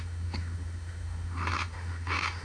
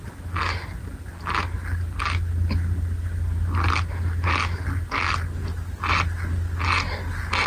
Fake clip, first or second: first